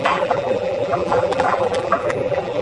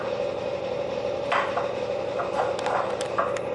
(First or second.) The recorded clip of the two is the second